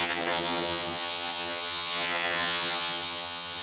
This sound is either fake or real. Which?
fake